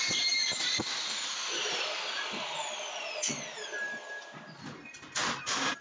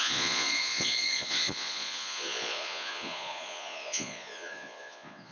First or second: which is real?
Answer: first